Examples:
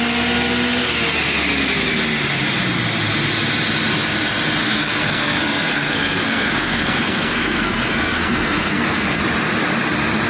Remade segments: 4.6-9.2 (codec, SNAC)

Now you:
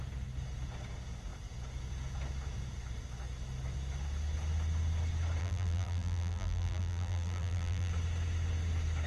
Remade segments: 5.4-7.9 (vocoder, BigVGAN v2)

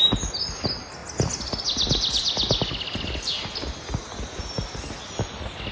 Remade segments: none

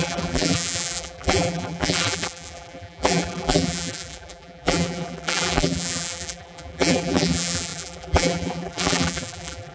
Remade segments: 0.0-9.7 (vocoder, BigVGAN v2)

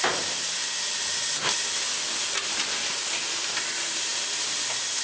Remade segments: none

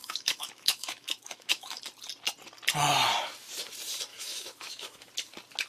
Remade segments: 0.0-1.8 (autoencoder, DAC-VAE); 4.1-5.1